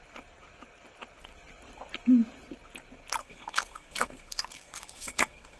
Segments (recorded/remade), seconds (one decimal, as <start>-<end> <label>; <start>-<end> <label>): 0.0-3.2 recorded; 3.2-5.6 remade